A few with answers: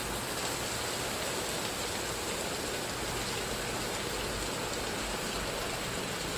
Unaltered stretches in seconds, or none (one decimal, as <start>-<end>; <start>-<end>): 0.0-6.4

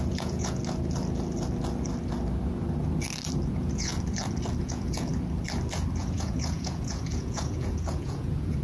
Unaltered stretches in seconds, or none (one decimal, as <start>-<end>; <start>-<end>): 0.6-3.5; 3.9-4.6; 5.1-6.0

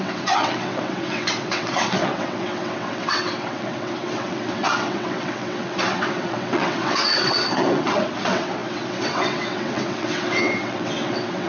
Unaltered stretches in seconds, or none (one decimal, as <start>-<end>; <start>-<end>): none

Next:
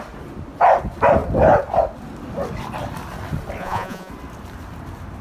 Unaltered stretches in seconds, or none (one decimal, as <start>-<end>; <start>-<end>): 0.0-3.6; 4.1-5.2